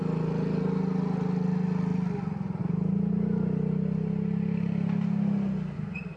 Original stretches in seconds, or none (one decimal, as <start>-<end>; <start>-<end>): 0.0-6.2